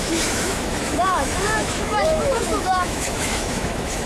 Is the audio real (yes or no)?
no